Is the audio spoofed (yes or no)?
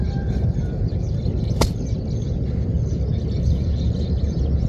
no